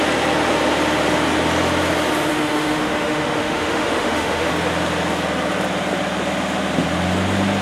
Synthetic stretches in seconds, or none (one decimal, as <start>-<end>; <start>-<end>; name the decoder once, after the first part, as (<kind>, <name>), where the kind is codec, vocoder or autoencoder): 2.3-4.5 (autoencoder, DAC-VAE)